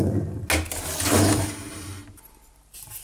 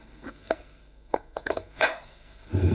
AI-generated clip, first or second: second